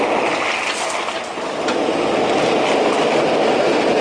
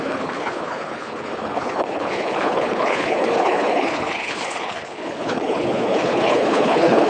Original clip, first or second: first